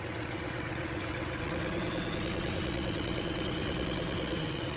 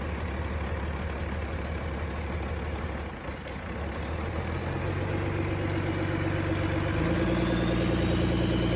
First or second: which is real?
second